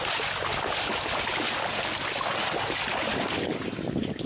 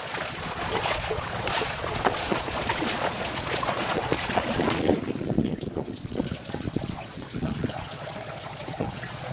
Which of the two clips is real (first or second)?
first